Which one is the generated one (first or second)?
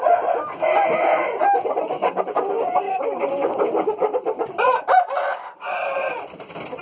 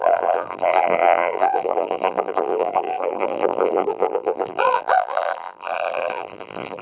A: second